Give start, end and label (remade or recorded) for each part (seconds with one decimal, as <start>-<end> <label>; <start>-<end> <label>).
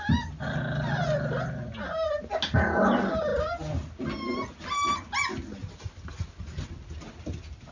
0.0-7.7 recorded